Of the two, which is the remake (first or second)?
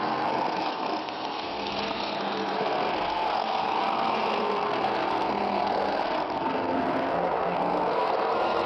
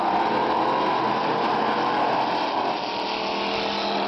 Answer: first